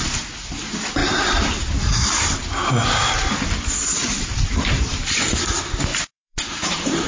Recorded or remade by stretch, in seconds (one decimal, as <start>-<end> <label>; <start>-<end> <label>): 0.0-4.0 recorded; 4.0-5.4 remade; 5.4-5.9 recorded; 5.9-7.1 remade